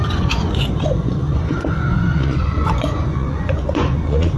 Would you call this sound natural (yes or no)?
no